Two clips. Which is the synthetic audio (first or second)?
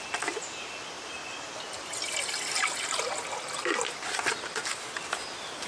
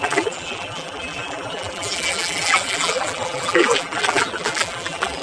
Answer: second